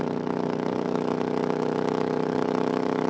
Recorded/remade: remade